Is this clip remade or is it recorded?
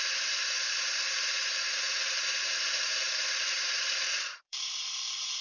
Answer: remade